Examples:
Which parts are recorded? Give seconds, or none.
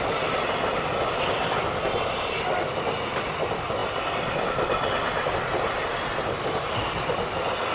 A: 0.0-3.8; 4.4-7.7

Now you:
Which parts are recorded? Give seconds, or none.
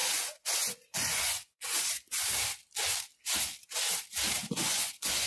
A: 1.9-4.4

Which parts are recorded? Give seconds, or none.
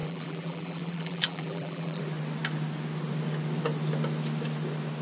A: 2.0-5.0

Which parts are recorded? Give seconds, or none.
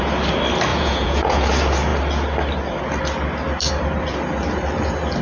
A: 0.0-0.7; 1.5-5.2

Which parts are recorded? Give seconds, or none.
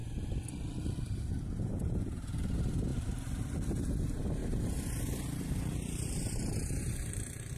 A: 0.0-4.4; 7.1-7.6